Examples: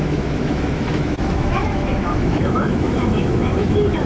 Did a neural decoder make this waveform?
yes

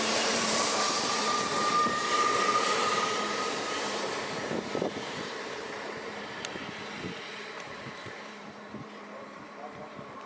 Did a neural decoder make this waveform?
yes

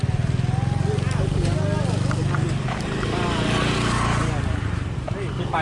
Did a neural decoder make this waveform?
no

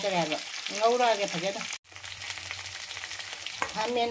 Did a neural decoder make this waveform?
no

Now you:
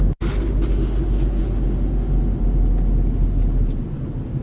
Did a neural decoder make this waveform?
no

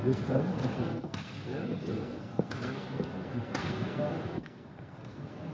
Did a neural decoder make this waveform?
yes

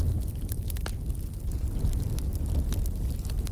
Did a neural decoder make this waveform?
no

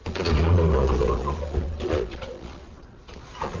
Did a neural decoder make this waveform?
yes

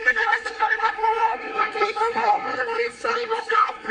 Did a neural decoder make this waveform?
yes